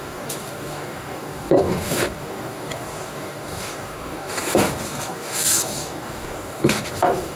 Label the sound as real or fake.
fake